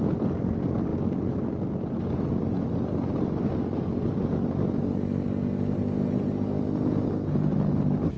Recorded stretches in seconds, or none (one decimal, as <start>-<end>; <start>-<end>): 0.0-8.2